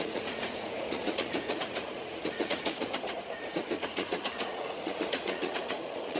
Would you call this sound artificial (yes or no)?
yes